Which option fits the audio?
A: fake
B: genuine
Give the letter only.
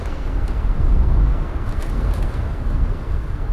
A